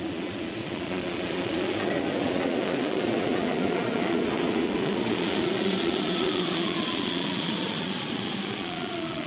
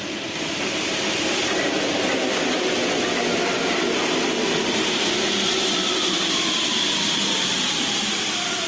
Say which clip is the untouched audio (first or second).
second